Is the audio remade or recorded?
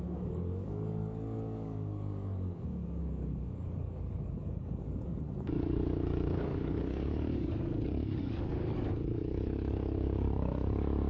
remade